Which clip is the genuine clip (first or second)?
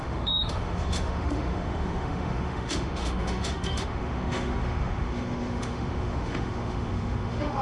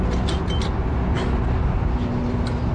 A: second